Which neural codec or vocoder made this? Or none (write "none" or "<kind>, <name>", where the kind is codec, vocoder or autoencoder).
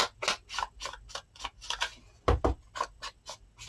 none